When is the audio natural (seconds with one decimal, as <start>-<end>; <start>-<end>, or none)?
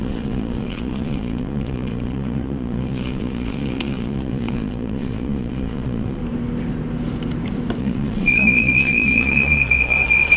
6.2-7.8